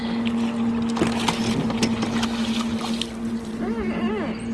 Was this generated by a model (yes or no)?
no